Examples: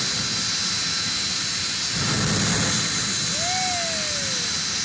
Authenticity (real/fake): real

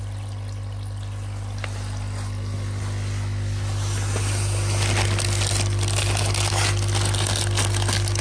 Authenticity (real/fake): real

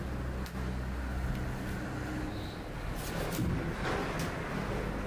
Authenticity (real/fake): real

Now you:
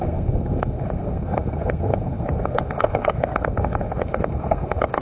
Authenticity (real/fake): fake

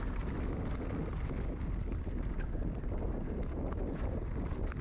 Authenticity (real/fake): real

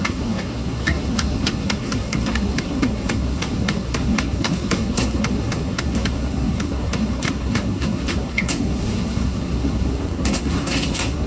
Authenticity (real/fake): fake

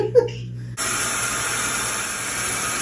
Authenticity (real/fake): real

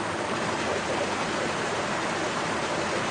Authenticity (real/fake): real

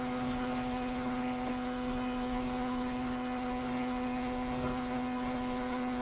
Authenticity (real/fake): fake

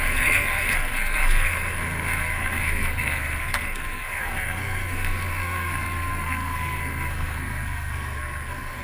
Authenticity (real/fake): fake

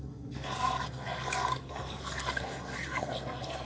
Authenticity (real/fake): fake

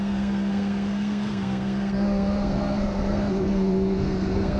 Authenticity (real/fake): fake